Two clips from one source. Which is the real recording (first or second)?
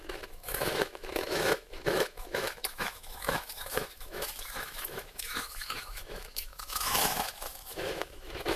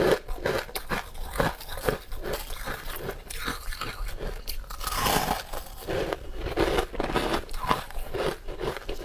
second